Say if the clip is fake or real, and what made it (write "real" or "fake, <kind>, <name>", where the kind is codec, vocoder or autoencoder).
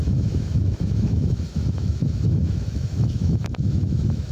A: fake, autoencoder, DAC-VAE